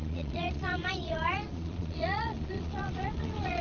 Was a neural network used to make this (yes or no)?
yes